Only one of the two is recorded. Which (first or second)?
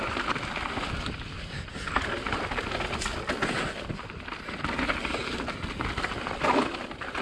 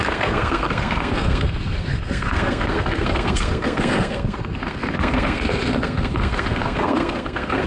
first